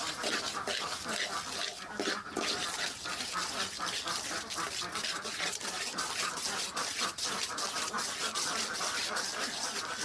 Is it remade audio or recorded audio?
recorded